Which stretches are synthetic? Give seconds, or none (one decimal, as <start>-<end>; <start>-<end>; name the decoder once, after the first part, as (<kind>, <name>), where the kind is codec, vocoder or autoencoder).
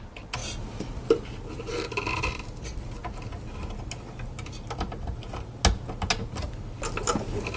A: none